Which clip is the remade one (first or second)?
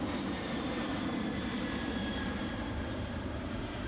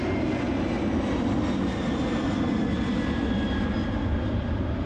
first